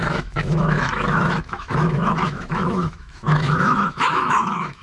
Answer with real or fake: fake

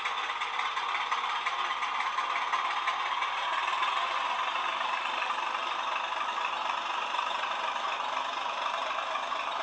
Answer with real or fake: real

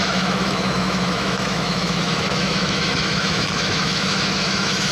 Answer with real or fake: fake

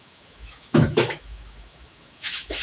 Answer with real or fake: fake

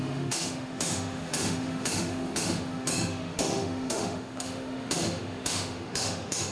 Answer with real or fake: fake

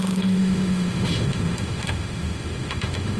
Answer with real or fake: fake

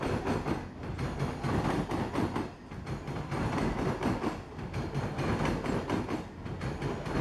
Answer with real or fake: real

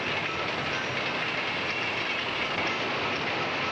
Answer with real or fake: real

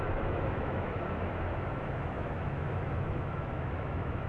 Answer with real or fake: fake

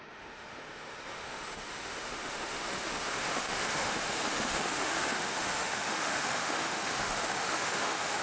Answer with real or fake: fake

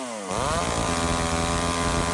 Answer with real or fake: real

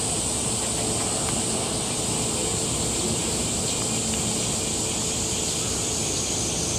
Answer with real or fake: real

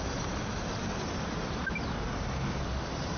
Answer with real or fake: real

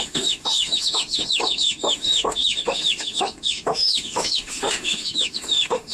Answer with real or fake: fake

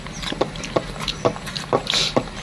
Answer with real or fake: real